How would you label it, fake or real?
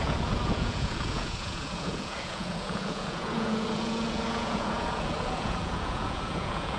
fake